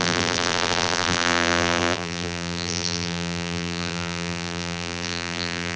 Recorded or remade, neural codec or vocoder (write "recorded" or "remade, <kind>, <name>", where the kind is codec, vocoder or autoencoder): remade, vocoder, BigVGAN v2